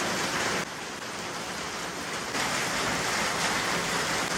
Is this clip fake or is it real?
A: real